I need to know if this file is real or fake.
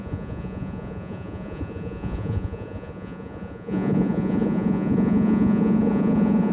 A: fake